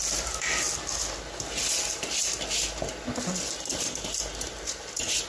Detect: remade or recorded recorded